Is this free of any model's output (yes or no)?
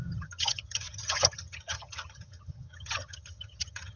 no